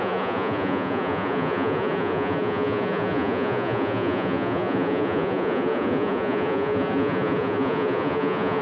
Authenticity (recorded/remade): remade